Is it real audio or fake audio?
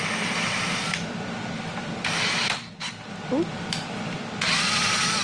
fake